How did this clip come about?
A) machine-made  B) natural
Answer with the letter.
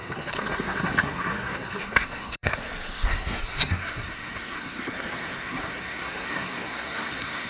A